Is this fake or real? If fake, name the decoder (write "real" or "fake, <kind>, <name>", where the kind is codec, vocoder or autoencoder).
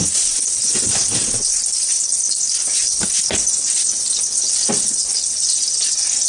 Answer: real